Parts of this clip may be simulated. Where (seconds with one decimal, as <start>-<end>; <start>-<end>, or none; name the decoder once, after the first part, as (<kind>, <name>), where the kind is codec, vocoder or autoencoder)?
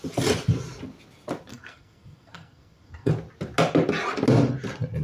1.5-3.1 (codec, SNAC)